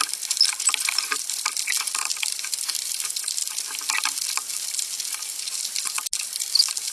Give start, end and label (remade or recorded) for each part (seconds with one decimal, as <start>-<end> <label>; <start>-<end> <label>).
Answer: 0.0-6.9 recorded

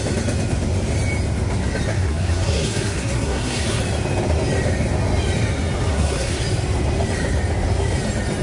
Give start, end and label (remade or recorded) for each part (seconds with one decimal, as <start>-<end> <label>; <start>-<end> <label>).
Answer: 0.0-1.9 recorded; 1.9-3.8 remade; 3.8-5.9 recorded; 5.9-6.4 remade; 6.4-8.4 recorded

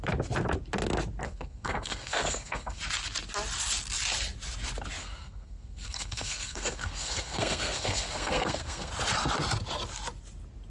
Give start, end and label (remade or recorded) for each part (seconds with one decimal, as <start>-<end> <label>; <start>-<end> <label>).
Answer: 0.0-1.2 recorded; 1.2-2.8 remade; 2.8-5.0 recorded; 5.0-8.9 remade; 8.9-10.7 recorded

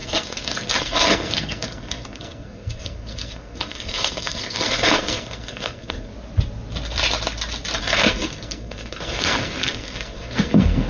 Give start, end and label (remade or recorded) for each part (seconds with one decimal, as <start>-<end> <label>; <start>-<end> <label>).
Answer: 0.0-6.1 remade; 6.1-7.8 recorded; 7.8-10.9 remade